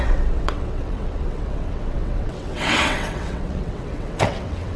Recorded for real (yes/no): no